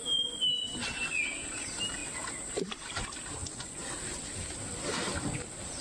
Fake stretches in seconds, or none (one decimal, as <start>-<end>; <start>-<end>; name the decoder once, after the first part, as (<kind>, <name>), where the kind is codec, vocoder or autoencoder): 3.4-3.9 (vocoder, Vocos)